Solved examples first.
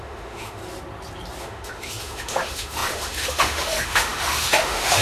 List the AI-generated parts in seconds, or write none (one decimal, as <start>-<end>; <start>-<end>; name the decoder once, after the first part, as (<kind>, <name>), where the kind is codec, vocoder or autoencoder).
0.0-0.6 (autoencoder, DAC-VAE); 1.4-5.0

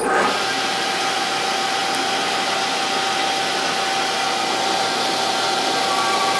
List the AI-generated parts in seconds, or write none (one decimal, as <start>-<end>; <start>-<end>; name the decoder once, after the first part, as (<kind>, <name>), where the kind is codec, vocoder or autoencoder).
none

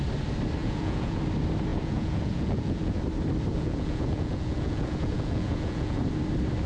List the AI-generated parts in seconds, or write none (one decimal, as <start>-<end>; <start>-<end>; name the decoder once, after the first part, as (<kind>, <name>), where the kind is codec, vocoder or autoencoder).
0.6-1.2 (vocoder, Vocos); 1.7-3.0; 3.5-6.0

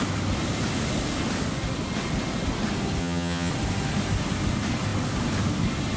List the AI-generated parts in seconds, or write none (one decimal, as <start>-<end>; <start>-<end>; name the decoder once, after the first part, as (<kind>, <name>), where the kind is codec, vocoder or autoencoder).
3.0-3.5 (vocoder, HiFi-GAN)

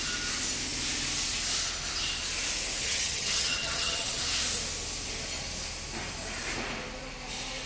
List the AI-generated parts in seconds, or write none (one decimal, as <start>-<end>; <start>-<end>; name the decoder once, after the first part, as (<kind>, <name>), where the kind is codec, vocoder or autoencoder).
2.8-4.2 (vocoder, HiFi-GAN)